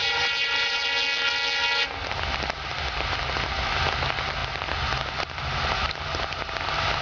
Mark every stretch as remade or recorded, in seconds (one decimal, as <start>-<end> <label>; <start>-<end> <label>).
0.0-0.8 remade; 0.8-7.0 recorded